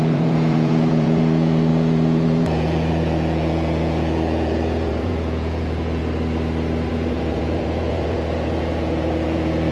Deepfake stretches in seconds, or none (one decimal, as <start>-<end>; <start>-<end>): 0.0-6.0; 6.9-9.7